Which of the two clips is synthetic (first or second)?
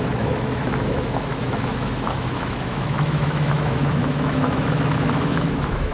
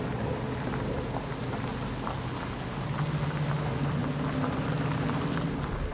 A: first